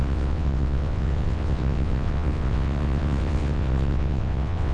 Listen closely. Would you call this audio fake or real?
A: fake